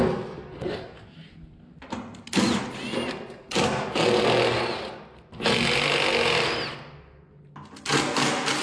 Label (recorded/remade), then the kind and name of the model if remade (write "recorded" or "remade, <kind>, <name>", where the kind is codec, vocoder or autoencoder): recorded